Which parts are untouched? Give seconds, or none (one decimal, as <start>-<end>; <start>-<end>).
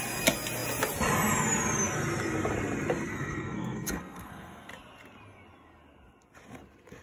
0.0-3.1; 4.7-7.0